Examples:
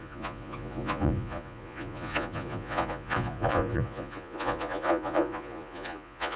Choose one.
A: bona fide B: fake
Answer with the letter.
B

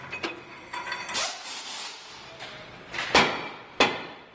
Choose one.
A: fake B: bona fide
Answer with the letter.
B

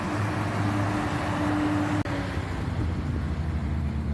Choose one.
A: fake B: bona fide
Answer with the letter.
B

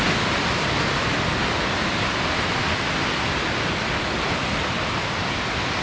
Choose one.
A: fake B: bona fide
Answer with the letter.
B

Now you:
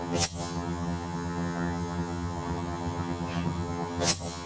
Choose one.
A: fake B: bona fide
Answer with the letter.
A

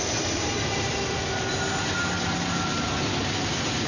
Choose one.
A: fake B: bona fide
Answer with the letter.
B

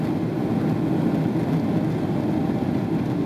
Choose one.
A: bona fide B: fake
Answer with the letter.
A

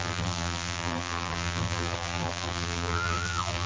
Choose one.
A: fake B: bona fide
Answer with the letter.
A